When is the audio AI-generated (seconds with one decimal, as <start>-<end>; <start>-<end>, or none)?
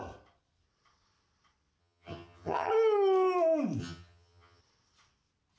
1.8-2.7; 3.8-4.6